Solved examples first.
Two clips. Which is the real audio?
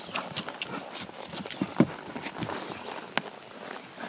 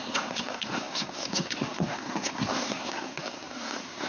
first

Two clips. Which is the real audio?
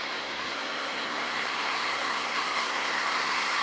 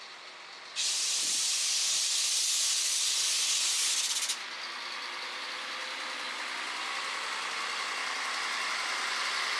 second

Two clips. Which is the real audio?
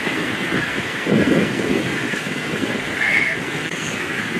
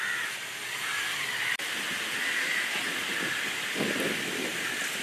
second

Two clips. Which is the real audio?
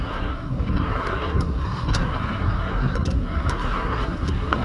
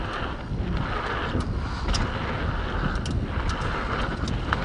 second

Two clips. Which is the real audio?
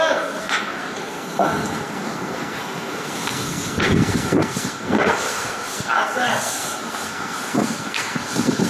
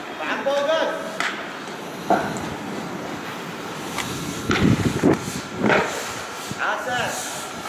second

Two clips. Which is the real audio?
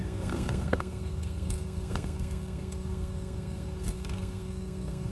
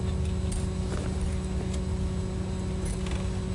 second